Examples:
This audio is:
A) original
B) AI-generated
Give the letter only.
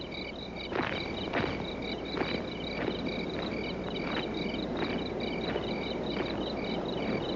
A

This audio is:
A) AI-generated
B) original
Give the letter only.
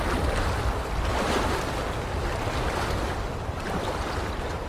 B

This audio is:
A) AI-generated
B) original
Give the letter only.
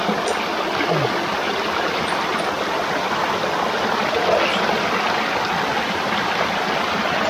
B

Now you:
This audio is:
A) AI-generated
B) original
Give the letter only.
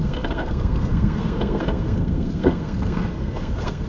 A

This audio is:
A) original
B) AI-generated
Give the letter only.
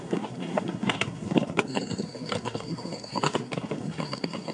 B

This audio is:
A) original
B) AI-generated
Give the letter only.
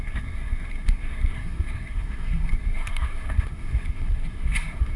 B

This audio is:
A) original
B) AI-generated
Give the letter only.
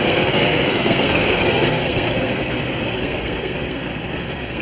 B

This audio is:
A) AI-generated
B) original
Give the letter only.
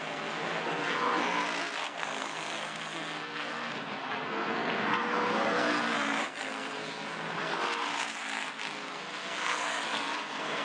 A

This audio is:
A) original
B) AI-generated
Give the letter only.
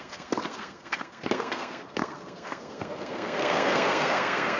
B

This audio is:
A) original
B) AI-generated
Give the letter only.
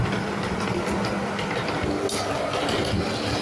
A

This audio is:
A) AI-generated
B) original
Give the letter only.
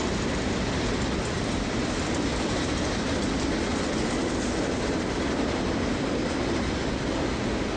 B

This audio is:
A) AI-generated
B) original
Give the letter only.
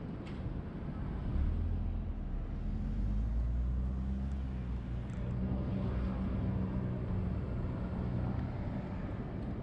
B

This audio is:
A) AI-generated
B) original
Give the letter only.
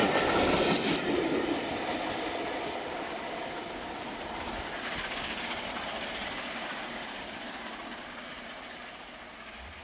B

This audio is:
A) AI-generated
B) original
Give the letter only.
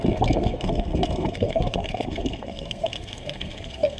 A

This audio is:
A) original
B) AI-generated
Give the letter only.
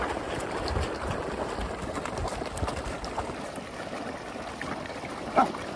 A